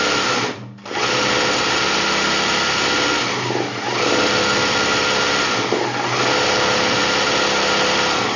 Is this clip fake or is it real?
real